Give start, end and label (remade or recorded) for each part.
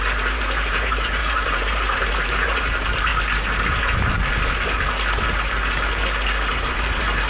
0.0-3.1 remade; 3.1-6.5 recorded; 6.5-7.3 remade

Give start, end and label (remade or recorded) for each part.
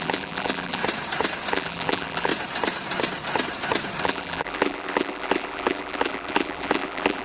0.0-0.8 remade; 0.8-1.5 recorded; 1.5-2.3 remade; 2.3-4.0 recorded; 4.0-7.2 remade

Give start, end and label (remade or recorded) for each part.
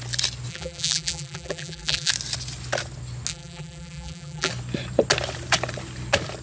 0.0-0.5 recorded; 0.5-2.1 remade; 2.1-3.3 recorded; 3.3-4.5 remade; 4.5-6.4 recorded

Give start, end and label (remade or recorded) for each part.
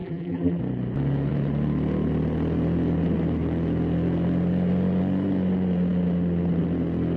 0.0-0.6 remade; 0.6-7.2 recorded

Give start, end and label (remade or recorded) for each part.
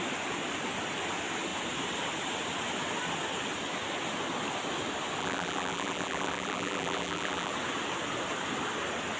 0.0-5.2 recorded; 5.2-7.5 remade; 7.5-9.2 recorded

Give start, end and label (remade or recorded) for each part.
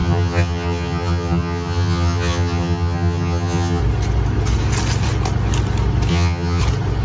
0.0-3.8 remade; 3.8-6.1 recorded; 6.1-6.6 remade; 6.6-7.0 recorded